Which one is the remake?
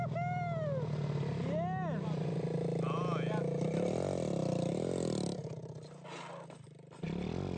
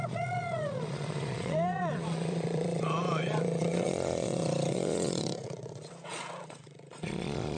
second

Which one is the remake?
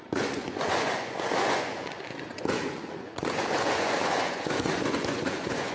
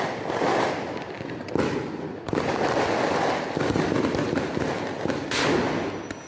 first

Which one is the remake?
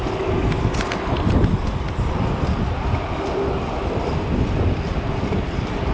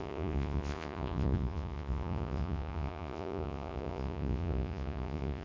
second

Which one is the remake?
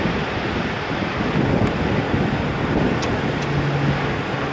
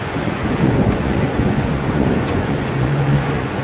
second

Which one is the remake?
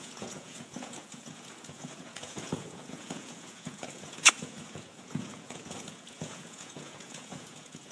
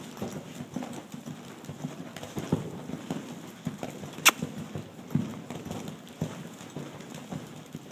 first